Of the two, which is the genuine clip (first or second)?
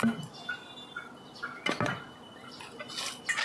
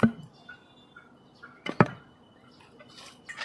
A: first